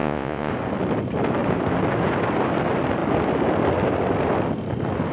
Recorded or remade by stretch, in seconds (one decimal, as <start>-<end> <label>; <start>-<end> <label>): 0.0-0.5 remade; 0.5-5.1 recorded